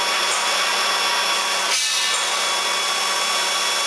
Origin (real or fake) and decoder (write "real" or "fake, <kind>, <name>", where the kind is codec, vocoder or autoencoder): real